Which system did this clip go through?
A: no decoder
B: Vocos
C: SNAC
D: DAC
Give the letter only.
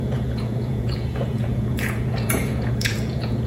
B